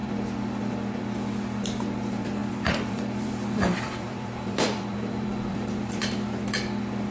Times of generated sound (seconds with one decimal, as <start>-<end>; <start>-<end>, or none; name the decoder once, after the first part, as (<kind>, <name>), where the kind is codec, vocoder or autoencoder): 2.4-6.3 (vocoder, BigVGAN v2)